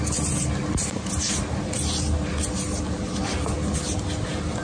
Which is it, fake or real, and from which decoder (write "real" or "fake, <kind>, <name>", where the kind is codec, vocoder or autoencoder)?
real